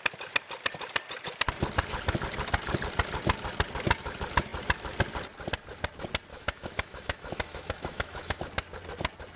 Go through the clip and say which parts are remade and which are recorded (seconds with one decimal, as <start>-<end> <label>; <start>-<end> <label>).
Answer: 0.0-6.3 recorded; 6.3-8.4 remade; 8.4-9.4 recorded